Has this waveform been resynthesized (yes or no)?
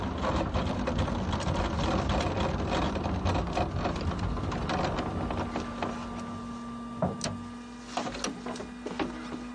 no